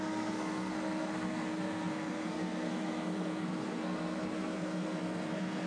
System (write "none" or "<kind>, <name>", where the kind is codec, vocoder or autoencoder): codec, SNAC